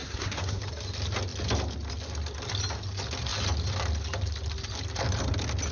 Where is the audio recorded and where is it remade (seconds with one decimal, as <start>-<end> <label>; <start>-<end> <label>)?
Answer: 0.0-0.6 remade; 0.6-5.7 recorded